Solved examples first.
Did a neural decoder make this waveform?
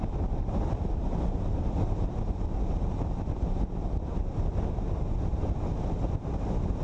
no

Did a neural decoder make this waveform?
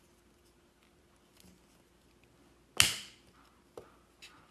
no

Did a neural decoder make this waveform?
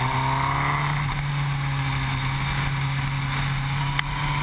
no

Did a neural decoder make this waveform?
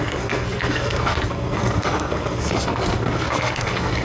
yes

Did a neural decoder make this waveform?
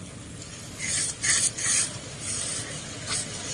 no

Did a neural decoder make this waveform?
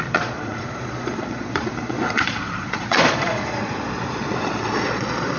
yes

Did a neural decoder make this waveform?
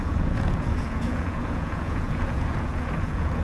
yes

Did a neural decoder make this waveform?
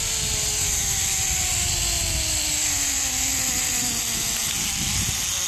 no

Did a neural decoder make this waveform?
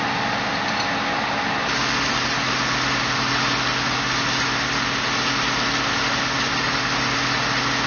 no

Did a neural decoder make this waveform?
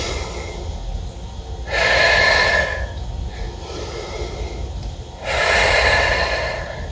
no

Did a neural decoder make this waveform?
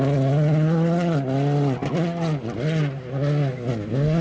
no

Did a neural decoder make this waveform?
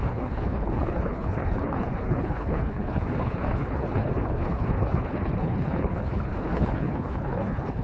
yes